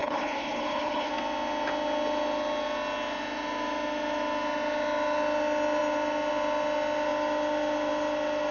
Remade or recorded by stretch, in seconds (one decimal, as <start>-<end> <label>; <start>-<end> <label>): 0.0-1.1 remade; 1.1-8.5 recorded